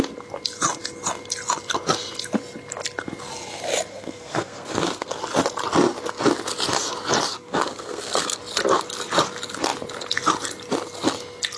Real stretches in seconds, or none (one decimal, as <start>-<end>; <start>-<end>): 0.0-3.9; 5.2-7.3; 8.4-11.6